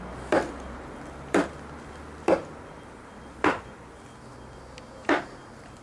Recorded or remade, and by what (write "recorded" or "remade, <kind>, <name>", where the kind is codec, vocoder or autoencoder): recorded